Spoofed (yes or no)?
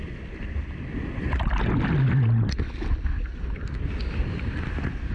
no